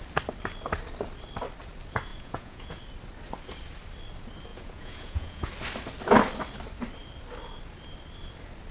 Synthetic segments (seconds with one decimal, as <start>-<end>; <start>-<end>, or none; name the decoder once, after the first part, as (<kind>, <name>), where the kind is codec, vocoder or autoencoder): 2.1-2.8 (vocoder, Vocos); 4.5-5.5